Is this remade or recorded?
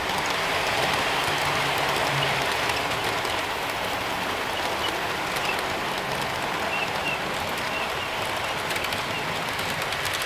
recorded